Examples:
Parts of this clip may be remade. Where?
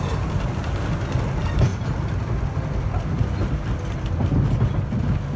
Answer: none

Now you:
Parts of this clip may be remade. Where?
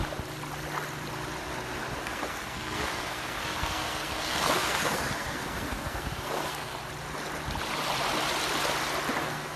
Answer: 2.0-6.7 (codec, SNAC); 9.2-9.6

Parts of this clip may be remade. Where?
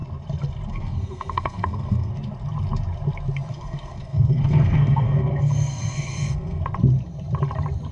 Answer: 0.7-2.1 (codec, SNAC); 3.5-6.6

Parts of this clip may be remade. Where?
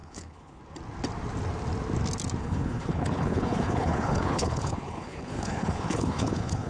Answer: 0.0-0.6 (codec, HILCodec); 2.4-6.7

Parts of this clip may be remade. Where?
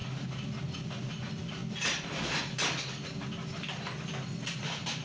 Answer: none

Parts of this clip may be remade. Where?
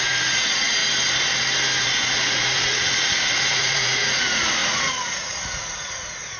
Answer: 0.0-0.8 (vocoder, Vocos); 1.8-6.4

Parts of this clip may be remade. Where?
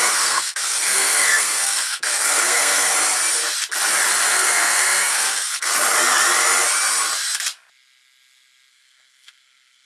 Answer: 0.0-2.9 (codec, SNAC); 4.3-5.7; 8.7-9.9